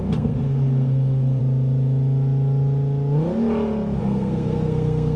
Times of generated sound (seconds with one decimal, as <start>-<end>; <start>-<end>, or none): 0.0-1.4; 4.0-5.2